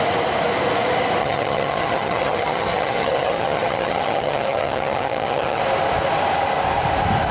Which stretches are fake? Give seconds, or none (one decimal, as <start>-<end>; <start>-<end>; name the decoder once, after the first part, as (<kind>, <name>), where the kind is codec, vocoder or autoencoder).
1.2-5.6 (vocoder, HiFi-GAN)